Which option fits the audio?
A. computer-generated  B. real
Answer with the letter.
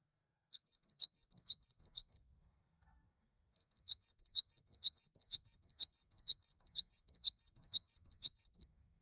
A